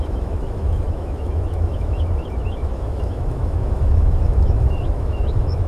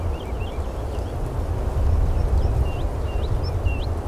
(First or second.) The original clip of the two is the second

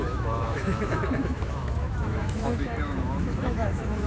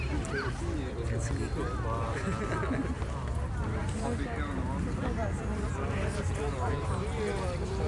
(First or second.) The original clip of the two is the second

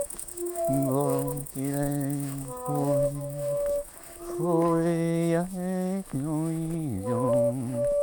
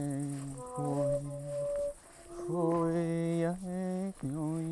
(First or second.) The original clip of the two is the second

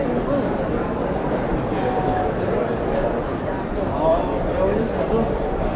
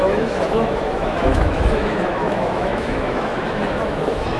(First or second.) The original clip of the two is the first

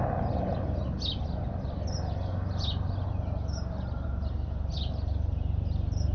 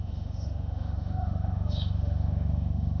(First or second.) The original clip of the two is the first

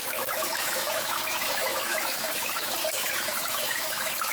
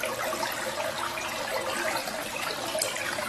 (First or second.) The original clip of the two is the second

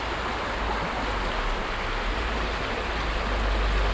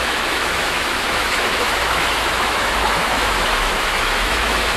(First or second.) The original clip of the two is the first